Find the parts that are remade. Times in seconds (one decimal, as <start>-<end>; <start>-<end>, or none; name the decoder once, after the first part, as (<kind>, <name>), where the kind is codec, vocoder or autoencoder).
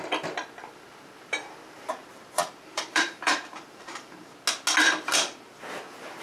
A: 0.6-4.3 (vocoder, BigVGAN v2)